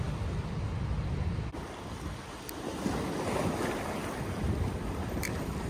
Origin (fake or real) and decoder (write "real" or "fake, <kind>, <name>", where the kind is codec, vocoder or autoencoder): real